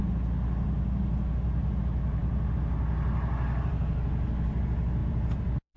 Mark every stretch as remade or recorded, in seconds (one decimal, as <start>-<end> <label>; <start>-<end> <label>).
0.0-5.0 recorded; 5.0-5.8 remade